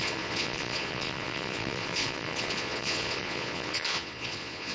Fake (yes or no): yes